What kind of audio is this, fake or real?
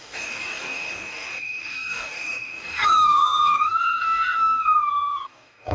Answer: fake